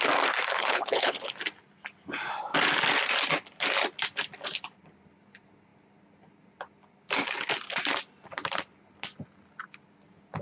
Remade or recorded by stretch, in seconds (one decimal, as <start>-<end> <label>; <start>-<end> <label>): 0.0-0.6 recorded; 0.6-1.3 remade; 1.3-10.4 recorded